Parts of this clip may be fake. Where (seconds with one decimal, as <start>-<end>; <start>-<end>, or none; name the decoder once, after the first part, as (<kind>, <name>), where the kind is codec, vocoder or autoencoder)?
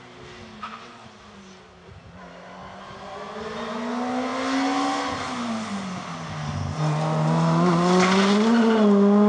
none